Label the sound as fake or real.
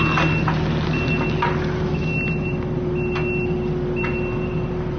real